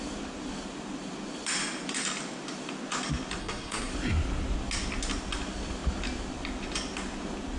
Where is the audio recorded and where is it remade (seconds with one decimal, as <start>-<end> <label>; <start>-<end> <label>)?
0.0-3.4 recorded; 3.4-3.9 remade; 3.9-7.6 recorded